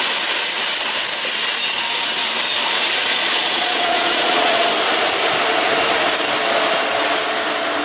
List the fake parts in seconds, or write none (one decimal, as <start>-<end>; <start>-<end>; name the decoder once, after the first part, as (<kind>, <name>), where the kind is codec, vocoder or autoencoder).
3.1-4.7 (vocoder, Vocos)